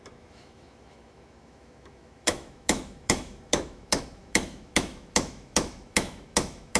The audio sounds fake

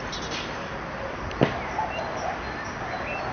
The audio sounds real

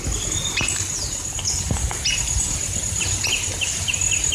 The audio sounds real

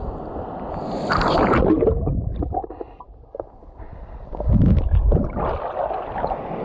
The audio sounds real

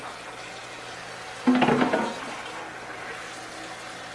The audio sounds real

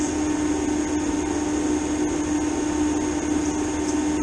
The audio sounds real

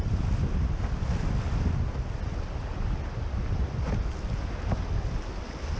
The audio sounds real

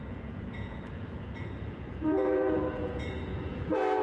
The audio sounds fake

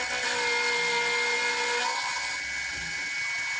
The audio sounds real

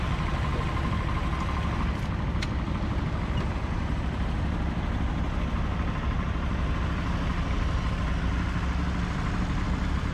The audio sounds real